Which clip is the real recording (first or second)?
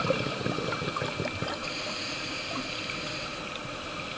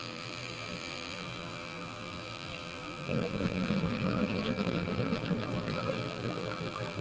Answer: first